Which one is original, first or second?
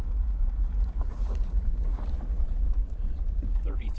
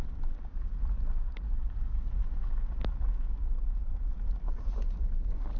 second